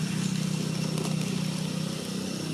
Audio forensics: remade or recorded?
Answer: recorded